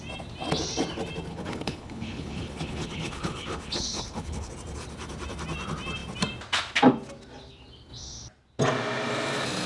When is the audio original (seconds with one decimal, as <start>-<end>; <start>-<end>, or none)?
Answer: 0.0-1.3; 4.5-9.7